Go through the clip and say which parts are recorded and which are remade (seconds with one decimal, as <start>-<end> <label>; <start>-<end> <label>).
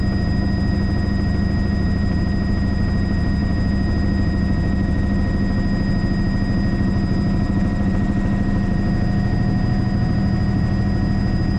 0.0-11.6 recorded